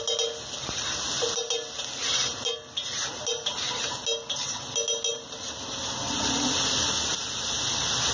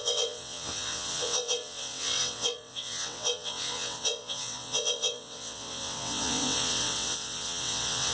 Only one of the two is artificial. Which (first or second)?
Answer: second